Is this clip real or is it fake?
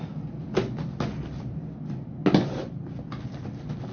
real